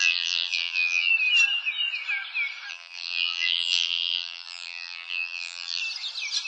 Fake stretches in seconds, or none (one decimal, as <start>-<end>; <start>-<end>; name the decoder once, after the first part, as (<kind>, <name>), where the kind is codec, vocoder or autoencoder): 0.0-1.1 (vocoder, BigVGAN v2); 2.7-5.8